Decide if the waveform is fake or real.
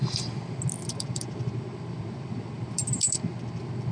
real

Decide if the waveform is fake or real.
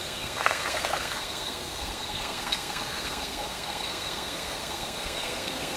fake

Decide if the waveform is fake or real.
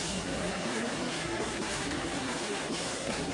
fake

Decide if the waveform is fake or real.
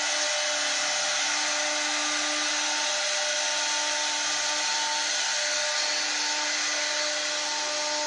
real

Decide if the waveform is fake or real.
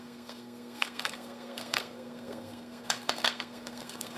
fake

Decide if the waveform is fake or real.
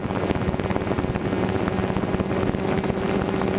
real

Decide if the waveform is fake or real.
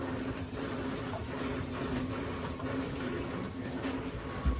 real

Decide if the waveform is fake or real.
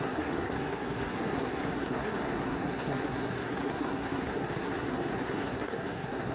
fake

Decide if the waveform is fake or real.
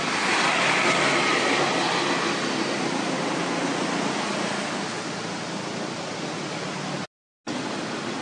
real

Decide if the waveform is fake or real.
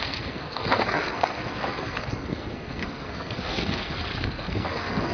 fake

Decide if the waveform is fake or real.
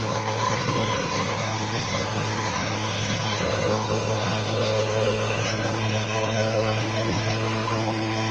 fake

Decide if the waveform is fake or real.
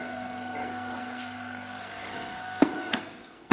fake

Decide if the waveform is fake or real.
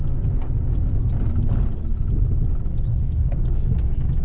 real